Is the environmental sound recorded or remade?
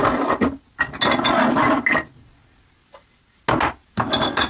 recorded